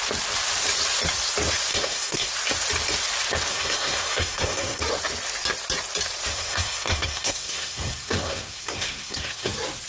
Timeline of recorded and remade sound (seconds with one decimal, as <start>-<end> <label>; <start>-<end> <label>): 0.0-1.7 recorded; 1.7-2.3 remade; 2.3-3.5 recorded; 3.5-4.8 remade; 4.8-6.3 recorded; 6.3-9.5 remade; 9.5-9.9 recorded